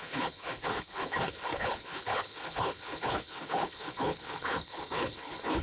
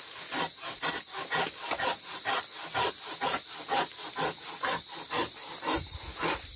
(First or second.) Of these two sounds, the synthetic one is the first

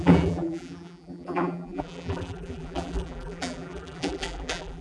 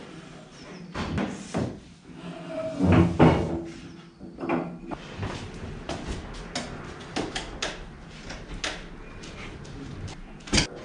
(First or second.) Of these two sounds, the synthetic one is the first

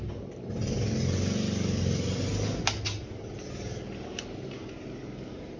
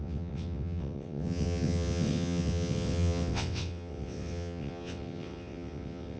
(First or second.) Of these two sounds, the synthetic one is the second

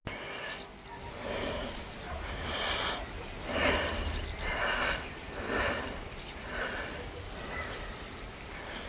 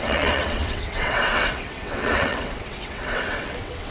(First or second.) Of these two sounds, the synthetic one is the second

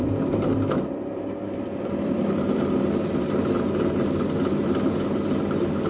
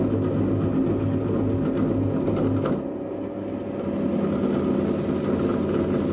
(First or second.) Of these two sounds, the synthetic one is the first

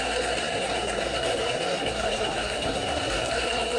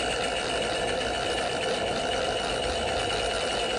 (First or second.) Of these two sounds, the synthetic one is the first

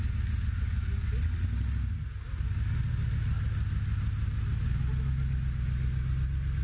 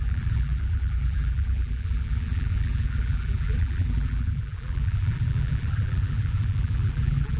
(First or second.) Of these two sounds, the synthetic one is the second